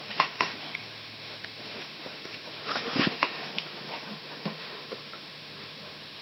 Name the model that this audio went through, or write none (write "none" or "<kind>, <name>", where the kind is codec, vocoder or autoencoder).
autoencoder, DAC-VAE